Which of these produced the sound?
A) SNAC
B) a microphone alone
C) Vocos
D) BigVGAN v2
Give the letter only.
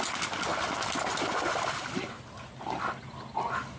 B